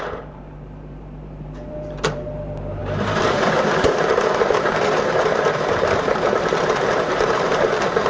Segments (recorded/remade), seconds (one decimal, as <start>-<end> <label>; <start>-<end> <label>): 0.0-8.1 remade

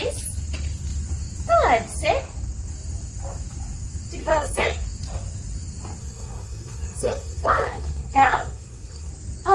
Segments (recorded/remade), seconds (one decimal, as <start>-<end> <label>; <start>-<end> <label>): 0.0-4.2 recorded; 4.2-4.8 remade; 4.8-6.0 recorded; 6.0-9.1 remade; 9.1-9.5 recorded

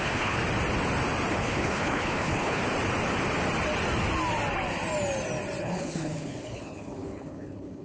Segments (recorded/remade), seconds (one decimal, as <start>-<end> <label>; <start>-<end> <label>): 0.0-0.4 remade; 0.4-1.3 recorded; 1.3-2.6 remade; 2.6-5.6 recorded; 5.6-7.8 remade

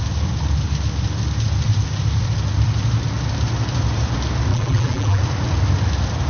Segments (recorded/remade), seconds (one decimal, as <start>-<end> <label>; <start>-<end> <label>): 0.0-4.5 recorded; 4.5-5.2 remade; 5.2-6.3 recorded